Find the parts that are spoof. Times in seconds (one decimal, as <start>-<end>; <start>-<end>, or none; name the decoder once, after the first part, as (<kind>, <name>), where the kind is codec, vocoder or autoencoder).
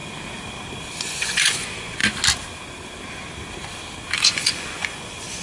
1.0-2.0 (vocoder, Vocos); 4.2-5.4